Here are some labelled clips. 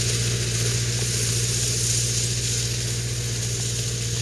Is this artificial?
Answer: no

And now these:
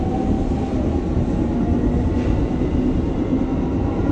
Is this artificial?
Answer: no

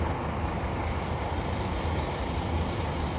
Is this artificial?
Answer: no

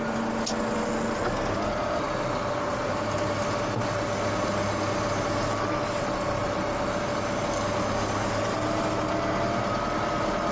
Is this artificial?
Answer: no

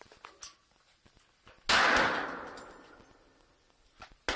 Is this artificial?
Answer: no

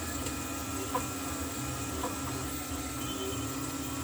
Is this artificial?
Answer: no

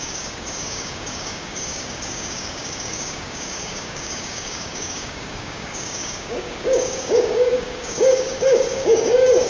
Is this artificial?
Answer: yes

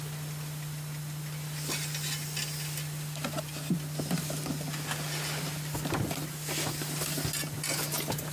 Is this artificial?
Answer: no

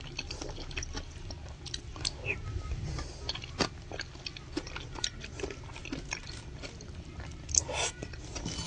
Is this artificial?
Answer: no